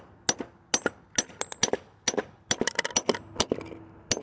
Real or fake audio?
real